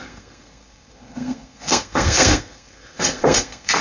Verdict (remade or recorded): remade